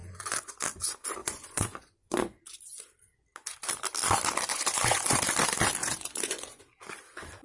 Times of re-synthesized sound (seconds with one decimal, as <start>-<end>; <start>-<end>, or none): 0.0-0.5; 1.2-2.4; 4.5-5.2; 5.8-6.6